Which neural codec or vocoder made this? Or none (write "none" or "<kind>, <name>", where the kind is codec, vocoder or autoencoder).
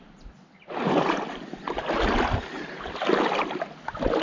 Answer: none